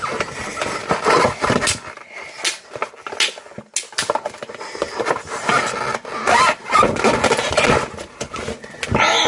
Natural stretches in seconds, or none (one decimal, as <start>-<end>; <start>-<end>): 0.0-9.3